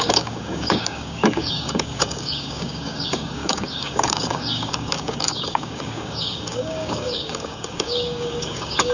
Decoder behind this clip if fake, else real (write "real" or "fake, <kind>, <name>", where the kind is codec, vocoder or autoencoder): fake, codec, DAC